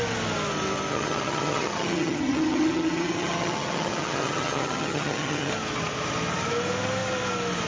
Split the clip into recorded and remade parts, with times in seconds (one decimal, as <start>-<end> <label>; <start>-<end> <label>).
0.0-0.9 recorded; 0.9-5.5 remade; 5.5-7.7 recorded

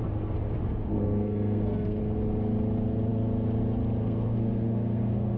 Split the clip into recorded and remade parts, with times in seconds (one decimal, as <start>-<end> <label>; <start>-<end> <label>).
0.0-0.9 recorded; 0.9-2.0 remade; 2.0-4.0 recorded; 4.0-5.4 remade

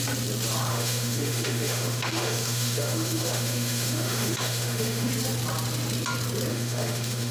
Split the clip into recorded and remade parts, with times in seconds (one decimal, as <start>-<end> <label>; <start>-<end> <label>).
0.0-0.7 recorded; 0.7-5.1 remade; 5.1-6.5 recorded; 6.5-7.3 remade

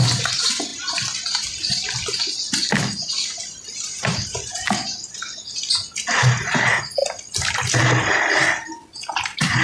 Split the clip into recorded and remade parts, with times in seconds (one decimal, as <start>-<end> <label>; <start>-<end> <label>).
0.0-9.6 recorded